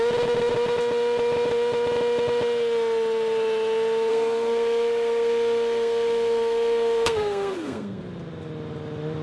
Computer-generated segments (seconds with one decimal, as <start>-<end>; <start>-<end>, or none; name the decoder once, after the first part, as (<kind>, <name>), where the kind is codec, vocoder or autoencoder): 4.1-8.0 (codec, SNAC)